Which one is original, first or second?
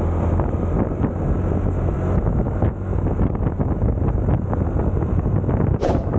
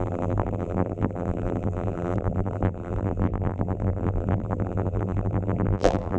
first